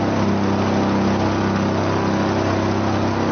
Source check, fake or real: real